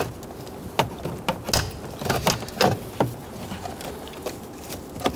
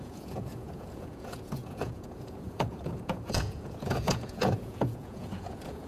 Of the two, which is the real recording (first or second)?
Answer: first